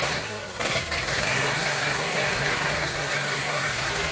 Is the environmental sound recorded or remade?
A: remade